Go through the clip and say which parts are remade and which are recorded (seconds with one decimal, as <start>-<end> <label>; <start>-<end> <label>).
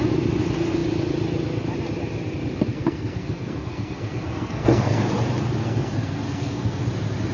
0.0-2.7 recorded; 2.7-5.0 remade; 5.0-5.6 recorded; 5.6-6.8 remade; 6.8-7.3 recorded